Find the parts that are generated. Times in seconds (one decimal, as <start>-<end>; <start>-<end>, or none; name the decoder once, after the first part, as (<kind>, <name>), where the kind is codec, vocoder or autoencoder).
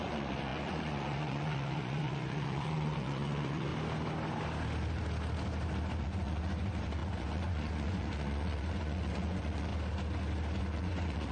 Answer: 0.0-3.7 (vocoder, Vocos); 6.0-9.7; 10.6-11.3